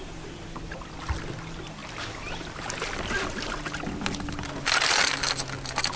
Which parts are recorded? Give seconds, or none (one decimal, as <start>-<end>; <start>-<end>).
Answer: 0.0-6.0